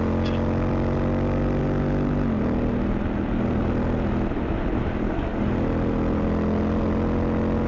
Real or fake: real